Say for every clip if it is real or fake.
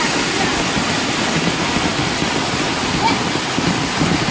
real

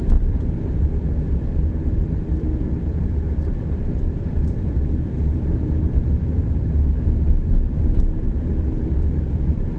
fake